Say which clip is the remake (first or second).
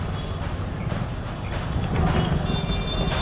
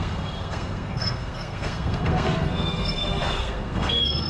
second